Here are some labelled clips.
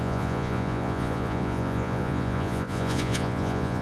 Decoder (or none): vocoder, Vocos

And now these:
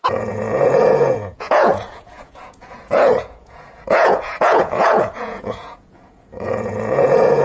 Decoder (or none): vocoder, Vocos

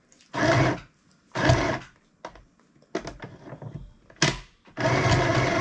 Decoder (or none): none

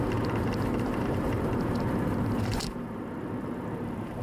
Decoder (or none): vocoder, BigVGAN v2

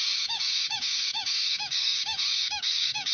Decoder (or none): codec, DAC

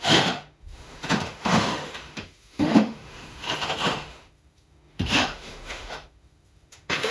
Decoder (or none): autoencoder, DAC-VAE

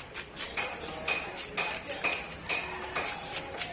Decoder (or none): none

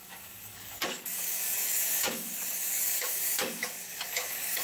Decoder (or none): codec, DAC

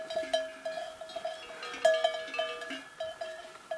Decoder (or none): none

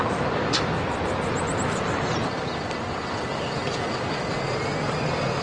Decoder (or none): none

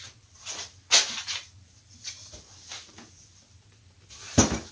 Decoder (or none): none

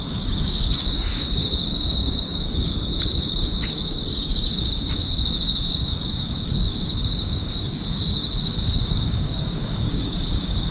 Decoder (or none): codec, DAC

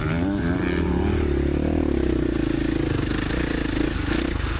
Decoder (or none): none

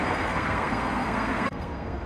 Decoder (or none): codec, SNAC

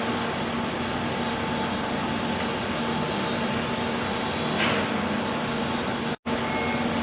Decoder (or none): none